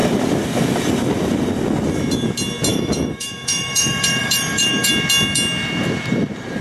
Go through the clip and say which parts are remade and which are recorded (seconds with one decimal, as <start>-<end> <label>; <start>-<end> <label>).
0.0-2.7 recorded; 2.7-4.9 remade; 4.9-6.6 recorded